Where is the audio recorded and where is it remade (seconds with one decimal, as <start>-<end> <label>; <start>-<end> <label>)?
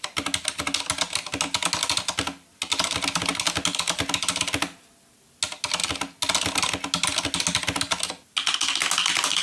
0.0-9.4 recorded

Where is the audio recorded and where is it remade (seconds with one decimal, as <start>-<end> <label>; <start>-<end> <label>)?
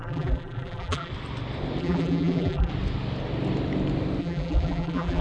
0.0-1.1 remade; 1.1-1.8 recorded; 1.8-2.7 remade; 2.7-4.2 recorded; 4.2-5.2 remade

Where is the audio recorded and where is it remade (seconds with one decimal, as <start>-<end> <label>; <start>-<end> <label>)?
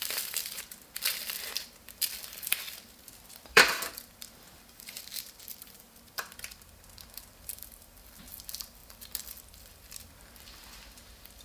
0.0-11.4 remade